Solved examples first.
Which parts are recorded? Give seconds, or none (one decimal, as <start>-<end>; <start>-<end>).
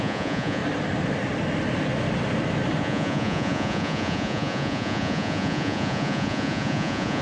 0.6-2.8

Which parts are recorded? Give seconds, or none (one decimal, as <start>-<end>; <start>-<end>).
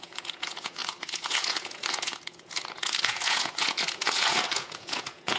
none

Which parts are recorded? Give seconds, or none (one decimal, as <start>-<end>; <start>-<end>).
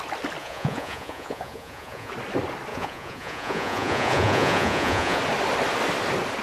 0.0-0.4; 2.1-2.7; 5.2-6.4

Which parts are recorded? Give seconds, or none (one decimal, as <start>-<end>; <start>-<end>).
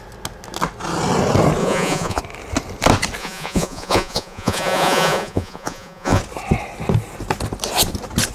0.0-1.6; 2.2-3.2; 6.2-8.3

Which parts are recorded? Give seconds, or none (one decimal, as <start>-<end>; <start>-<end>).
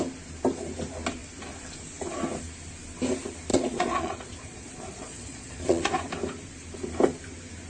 0.0-3.5; 5.9-7.7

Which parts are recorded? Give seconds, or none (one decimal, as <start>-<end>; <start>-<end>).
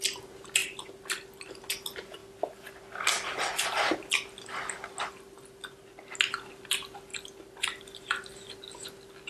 0.0-9.3